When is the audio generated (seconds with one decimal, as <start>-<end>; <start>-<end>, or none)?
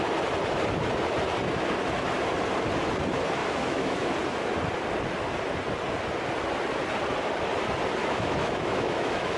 3.4-4.1; 8.0-9.4